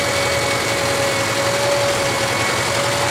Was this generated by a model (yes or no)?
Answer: no